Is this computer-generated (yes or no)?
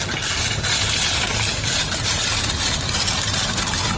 yes